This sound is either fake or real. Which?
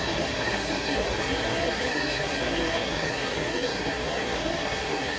fake